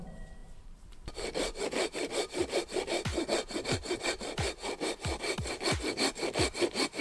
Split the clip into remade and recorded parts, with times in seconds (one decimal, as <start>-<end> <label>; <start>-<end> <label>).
0.0-2.4 remade; 2.4-3.5 recorded; 3.5-7.0 remade